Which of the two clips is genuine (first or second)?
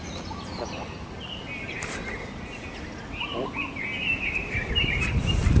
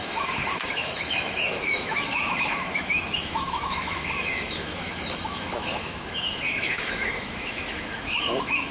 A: first